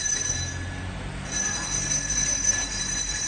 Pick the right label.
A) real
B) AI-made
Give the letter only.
A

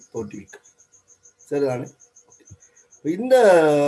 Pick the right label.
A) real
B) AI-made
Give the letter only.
A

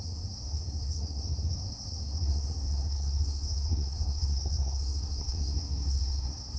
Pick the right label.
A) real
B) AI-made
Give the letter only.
B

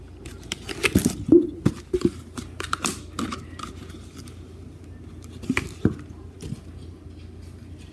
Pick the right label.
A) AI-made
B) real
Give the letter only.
B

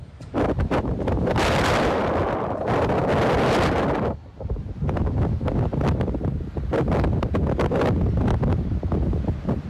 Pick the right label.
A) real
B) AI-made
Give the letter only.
A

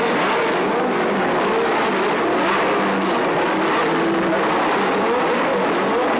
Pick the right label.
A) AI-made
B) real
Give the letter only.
B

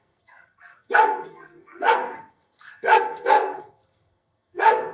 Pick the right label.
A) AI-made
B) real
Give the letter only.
A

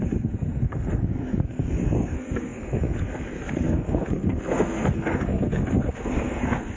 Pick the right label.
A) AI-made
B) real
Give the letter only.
A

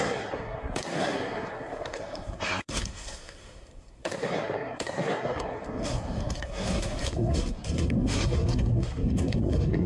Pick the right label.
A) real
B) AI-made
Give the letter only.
B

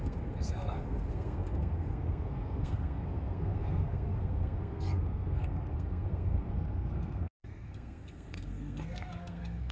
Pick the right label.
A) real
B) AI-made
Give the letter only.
B